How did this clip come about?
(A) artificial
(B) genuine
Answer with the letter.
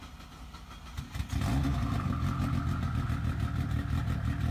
B